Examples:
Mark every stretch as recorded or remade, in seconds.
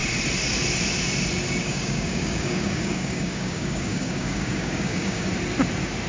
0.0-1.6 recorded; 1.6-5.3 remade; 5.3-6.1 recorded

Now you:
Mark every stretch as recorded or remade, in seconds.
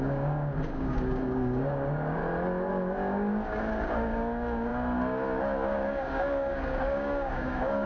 0.0-2.2 remade; 2.2-2.7 recorded; 2.7-7.9 remade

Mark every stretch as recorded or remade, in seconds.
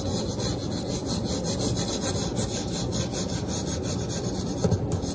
0.0-5.1 recorded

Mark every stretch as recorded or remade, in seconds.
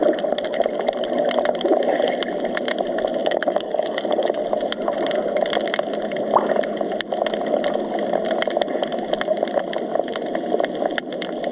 0.0-3.2 recorded; 3.2-4.4 remade; 4.4-11.5 recorded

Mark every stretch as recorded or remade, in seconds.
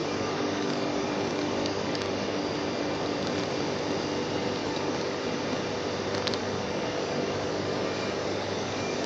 0.0-2.4 remade; 2.4-4.6 recorded; 4.6-5.2 remade; 5.2-6.4 recorded; 6.4-9.1 remade